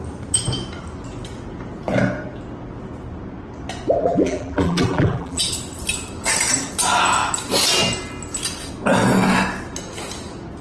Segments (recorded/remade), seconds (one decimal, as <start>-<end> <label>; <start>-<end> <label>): 0.0-4.0 recorded; 4.0-5.4 remade; 5.4-10.6 recorded